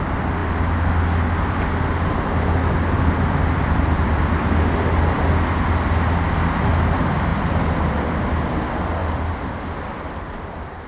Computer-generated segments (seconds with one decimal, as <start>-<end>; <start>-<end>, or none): none